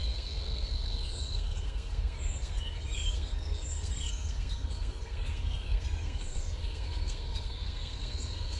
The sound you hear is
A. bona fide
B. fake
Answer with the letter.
B